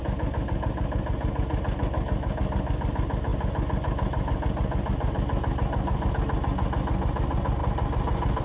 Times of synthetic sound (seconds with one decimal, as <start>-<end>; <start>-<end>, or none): none